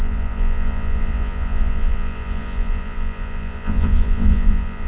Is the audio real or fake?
fake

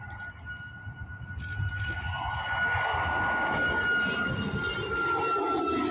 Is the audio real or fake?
real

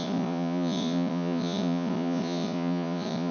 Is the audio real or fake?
fake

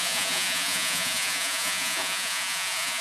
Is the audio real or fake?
fake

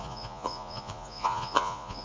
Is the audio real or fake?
fake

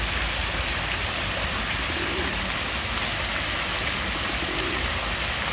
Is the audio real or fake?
real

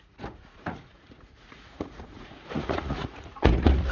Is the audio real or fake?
fake